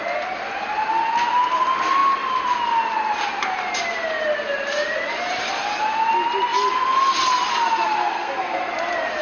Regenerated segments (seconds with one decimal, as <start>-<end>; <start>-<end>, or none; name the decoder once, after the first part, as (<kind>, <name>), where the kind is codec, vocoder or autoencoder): 8.0-8.7 (codec, SNAC)